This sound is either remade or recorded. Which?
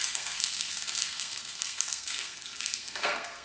remade